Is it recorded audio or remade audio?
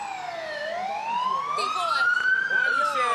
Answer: recorded